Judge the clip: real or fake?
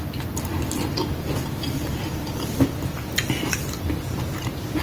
real